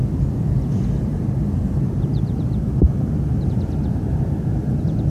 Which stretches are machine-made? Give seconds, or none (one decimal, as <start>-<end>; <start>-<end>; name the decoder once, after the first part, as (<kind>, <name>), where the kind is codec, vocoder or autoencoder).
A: 1.1-4.2 (vocoder, BigVGAN v2)